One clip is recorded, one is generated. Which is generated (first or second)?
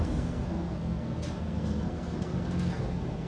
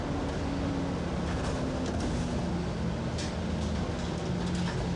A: first